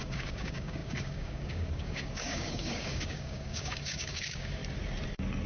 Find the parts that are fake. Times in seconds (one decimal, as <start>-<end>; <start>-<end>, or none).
0.0-4.6